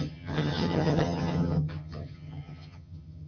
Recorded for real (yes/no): no